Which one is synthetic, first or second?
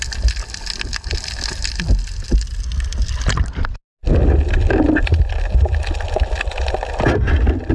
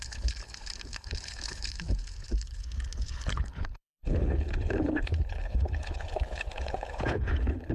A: second